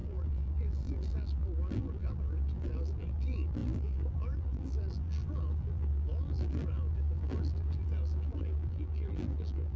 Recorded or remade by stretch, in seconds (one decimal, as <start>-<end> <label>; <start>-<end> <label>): 0.0-9.8 remade